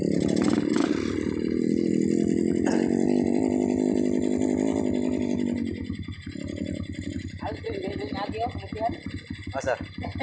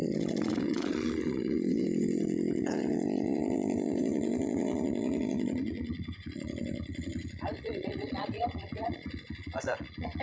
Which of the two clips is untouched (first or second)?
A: first